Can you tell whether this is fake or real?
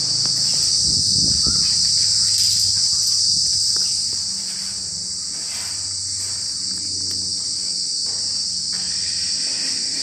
real